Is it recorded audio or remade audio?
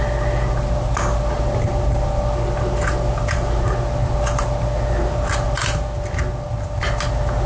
recorded